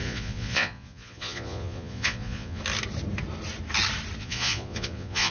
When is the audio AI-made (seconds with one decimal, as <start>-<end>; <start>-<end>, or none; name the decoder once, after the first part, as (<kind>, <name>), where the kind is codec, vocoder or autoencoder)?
0.0-2.6 (vocoder, Vocos); 4.2-5.3